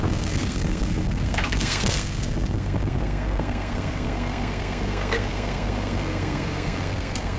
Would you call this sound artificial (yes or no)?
yes